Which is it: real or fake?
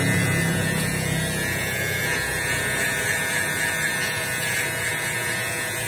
fake